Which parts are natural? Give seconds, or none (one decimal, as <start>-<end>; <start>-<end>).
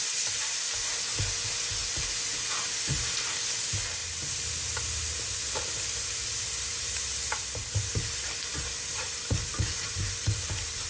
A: 0.0-10.9